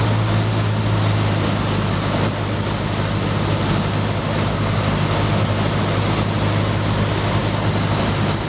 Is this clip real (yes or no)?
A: yes